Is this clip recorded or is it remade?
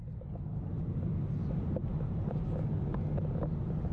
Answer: recorded